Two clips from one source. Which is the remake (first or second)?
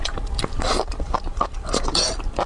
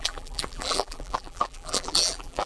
second